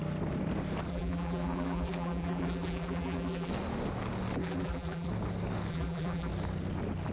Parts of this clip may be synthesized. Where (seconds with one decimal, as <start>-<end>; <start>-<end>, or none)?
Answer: 0.9-3.5; 4.4-5.1; 5.7-6.3

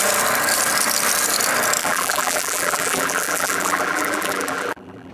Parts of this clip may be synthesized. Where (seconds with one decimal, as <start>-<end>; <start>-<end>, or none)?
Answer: 1.8-5.1